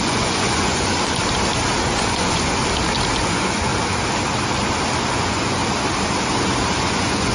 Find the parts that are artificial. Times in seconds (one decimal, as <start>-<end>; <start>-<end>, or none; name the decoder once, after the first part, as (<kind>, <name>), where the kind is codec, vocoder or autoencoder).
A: 0.0-0.9 (vocoder, Vocos); 1.8-2.6; 3.2-3.7; 5.1-5.6; 6.8-7.3